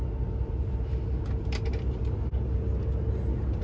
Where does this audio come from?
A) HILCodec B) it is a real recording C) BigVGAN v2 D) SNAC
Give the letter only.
B